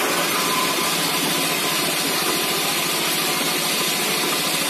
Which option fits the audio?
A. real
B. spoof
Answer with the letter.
A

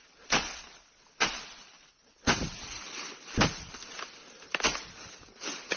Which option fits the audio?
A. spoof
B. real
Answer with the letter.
B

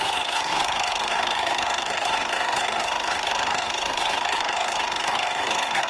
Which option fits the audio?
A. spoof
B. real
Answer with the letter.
A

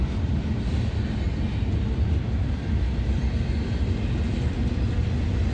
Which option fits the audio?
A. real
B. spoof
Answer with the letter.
A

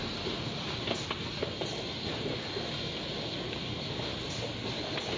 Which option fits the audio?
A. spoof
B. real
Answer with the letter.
B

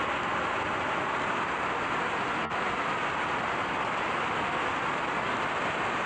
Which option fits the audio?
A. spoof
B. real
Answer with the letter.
B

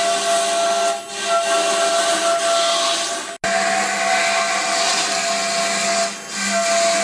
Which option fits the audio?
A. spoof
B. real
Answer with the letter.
B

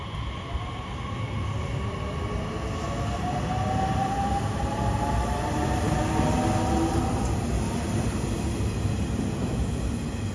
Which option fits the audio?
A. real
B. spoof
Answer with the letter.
A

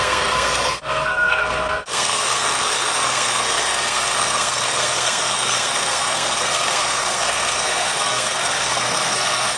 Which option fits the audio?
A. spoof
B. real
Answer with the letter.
A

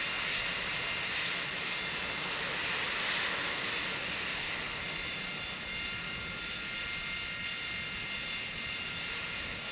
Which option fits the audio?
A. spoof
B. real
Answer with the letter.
B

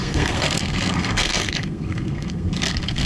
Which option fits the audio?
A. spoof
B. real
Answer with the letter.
A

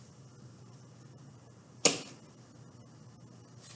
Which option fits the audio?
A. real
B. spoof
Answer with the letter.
A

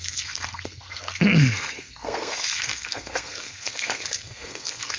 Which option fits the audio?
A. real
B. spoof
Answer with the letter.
B